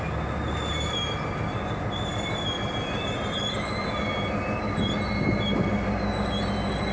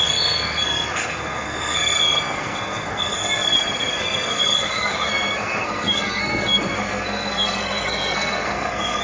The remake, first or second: second